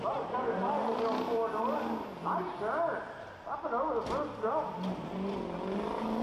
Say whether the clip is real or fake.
real